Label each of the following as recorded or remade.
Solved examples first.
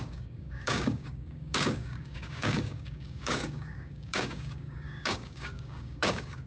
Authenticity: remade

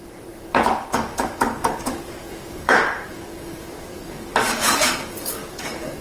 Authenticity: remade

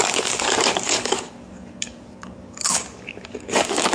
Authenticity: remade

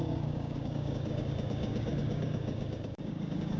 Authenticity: remade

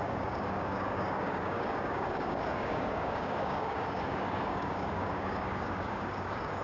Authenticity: remade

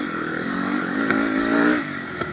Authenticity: remade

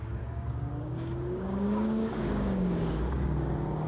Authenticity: remade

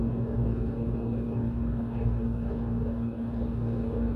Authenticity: remade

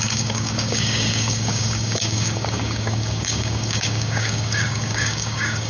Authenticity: remade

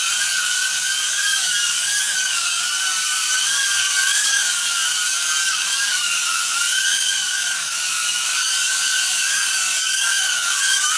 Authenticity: remade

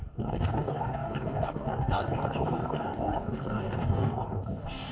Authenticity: remade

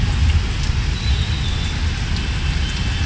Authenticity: recorded